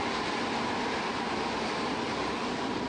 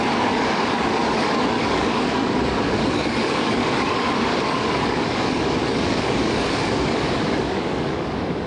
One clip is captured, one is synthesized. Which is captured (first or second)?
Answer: first